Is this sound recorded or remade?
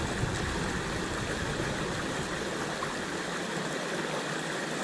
recorded